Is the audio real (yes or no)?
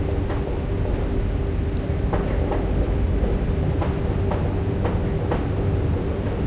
yes